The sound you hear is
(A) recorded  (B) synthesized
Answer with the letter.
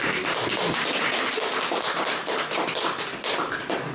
A